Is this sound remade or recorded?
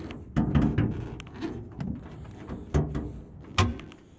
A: recorded